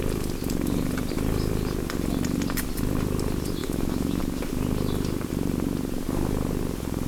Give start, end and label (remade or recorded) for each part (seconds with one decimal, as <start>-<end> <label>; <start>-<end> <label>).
0.0-3.6 recorded; 3.6-4.2 remade; 4.2-7.1 recorded